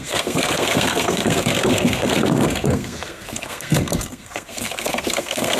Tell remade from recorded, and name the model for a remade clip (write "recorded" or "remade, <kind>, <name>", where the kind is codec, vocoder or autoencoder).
remade, codec, SNAC